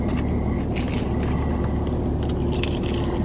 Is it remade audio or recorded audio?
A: recorded